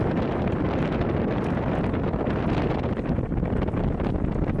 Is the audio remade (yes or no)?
no